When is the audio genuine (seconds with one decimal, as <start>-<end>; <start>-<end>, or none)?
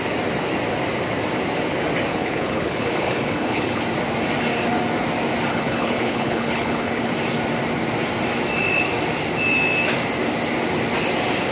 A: 0.0-2.1; 3.8-5.5; 7.1-11.5